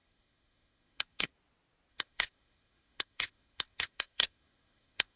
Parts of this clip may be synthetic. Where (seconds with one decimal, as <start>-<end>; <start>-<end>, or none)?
0.0-1.3; 1.9-5.2